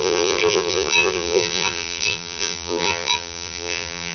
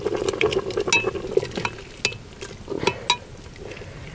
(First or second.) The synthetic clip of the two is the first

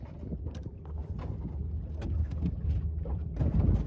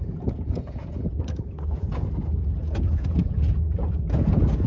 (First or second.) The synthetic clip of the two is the second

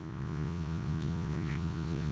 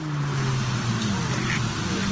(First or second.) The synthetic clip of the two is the first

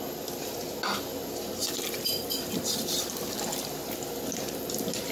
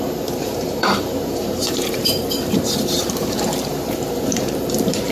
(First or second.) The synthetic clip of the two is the second